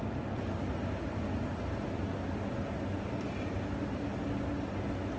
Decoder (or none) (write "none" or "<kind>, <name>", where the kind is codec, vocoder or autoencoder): none